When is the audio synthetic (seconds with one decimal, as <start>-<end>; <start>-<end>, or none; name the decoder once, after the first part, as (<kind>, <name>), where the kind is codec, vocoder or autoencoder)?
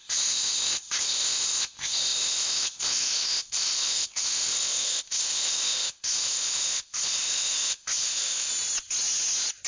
0.0-8.5 (codec, ZipCodec)